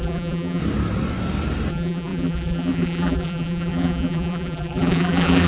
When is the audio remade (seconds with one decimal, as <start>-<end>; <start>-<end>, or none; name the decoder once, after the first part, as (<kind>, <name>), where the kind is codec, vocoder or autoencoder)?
0.0-0.6 (vocoder, BigVGAN v2); 1.7-5.5